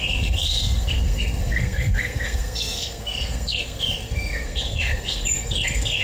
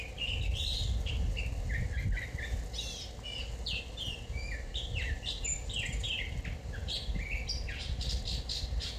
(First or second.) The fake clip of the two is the first